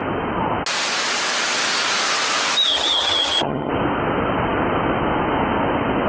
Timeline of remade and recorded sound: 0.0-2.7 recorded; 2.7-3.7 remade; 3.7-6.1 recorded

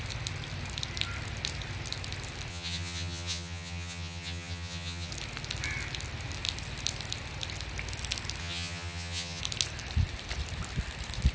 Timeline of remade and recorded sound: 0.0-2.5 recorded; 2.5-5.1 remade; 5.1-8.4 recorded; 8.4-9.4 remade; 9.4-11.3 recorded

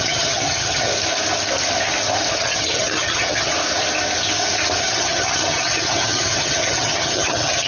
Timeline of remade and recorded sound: 0.0-0.9 remade; 0.9-2.3 recorded; 2.3-3.5 remade; 3.5-4.8 recorded; 4.8-7.7 remade

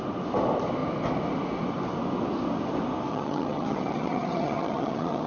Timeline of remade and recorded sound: 0.0-3.1 recorded; 3.1-5.3 remade

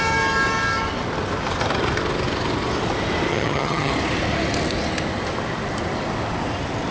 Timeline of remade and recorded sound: 0.0-3.3 recorded; 3.3-3.9 remade; 3.9-6.9 recorded

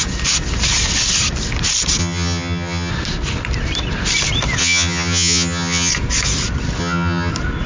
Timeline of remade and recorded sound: 0.0-2.0 recorded; 2.0-2.9 remade; 2.9-4.6 recorded; 4.6-5.9 remade; 5.9-6.8 recorded; 6.8-7.3 remade; 7.3-7.7 recorded

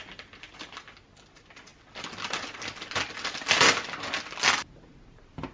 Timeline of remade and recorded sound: 0.0-5.5 recorded